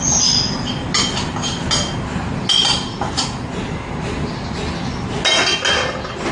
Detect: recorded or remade recorded